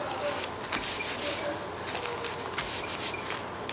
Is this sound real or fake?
real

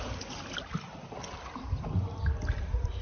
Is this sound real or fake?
real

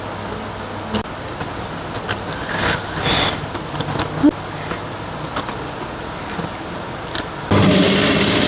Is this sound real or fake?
real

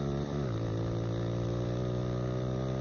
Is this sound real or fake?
real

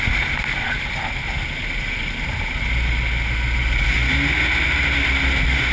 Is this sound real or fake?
real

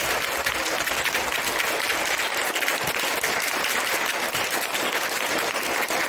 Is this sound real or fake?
real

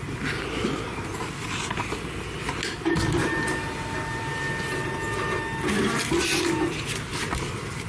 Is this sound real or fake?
real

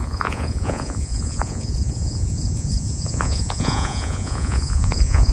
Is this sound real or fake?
fake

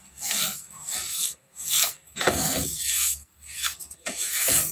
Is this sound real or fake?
fake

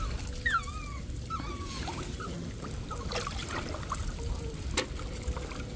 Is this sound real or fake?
real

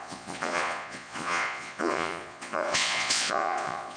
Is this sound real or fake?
fake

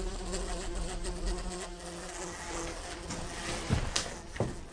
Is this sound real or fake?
real